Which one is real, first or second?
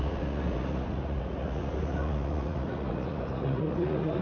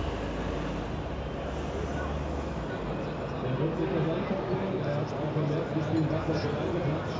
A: second